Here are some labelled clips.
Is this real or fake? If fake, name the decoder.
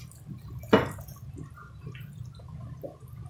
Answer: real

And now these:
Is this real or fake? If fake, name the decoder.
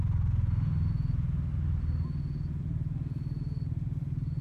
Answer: real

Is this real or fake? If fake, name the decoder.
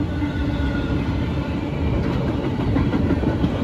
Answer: real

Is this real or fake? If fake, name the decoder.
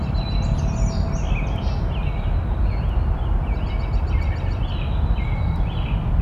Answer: real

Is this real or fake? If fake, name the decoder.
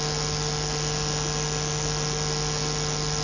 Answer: real